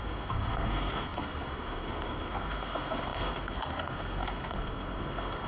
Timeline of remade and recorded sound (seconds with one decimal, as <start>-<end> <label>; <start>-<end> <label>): 0.0-5.5 remade